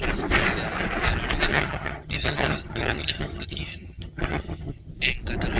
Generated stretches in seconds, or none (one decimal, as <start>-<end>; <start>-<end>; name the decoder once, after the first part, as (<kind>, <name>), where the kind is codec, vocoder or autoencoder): 1.5-4.9 (vocoder, HiFi-GAN)